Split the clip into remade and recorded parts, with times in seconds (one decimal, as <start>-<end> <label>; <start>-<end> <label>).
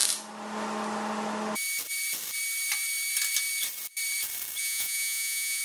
0.0-4.6 recorded; 4.6-5.6 remade